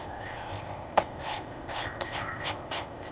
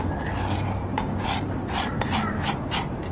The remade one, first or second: first